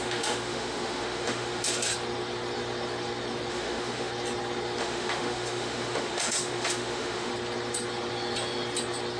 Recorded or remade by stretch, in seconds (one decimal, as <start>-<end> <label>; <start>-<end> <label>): 0.0-1.9 remade; 1.9-3.5 recorded; 3.5-4.1 remade; 4.1-4.8 recorded; 4.8-7.3 remade; 7.3-9.2 recorded